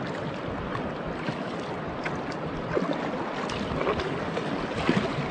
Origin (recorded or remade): recorded